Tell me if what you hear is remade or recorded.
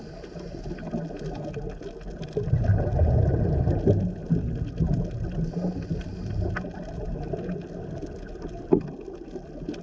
recorded